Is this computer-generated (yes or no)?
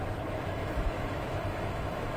yes